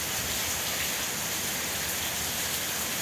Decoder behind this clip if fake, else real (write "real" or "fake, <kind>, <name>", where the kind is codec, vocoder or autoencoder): real